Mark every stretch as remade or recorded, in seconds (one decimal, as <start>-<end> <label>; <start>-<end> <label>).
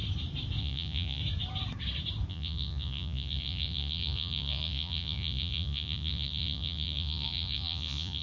0.0-0.6 recorded; 0.6-1.2 remade; 1.2-2.3 recorded; 2.3-8.2 remade